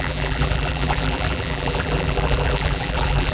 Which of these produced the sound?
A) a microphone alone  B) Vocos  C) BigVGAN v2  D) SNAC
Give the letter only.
C